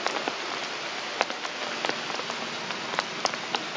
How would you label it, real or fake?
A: real